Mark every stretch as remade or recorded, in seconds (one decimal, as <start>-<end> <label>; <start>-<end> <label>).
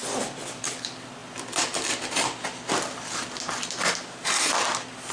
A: 0.0-5.1 recorded